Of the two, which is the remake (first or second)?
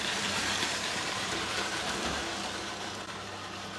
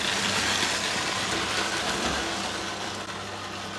first